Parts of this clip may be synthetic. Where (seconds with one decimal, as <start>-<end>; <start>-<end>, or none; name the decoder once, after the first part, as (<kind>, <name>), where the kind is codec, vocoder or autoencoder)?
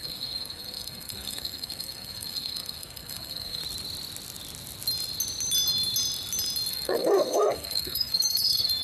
0.0-3.6 (codec, SNAC); 6.7-8.8